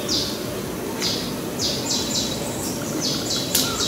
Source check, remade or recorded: recorded